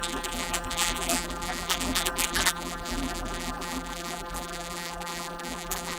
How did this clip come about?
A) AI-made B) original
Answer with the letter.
A